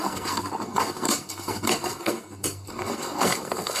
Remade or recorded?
remade